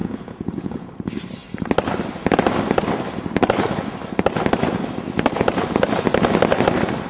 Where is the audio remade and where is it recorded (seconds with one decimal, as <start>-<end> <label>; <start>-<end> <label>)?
0.0-0.9 remade; 0.9-7.1 recorded